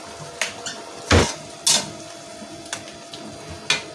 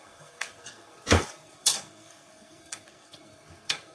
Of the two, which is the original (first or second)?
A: first